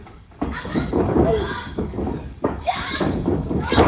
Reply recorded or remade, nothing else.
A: remade